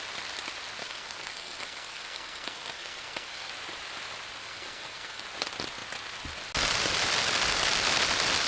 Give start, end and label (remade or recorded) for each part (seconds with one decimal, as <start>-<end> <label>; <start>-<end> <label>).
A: 0.0-0.8 recorded; 0.8-3.5 remade; 3.5-4.4 recorded; 4.4-5.2 remade; 5.2-8.5 recorded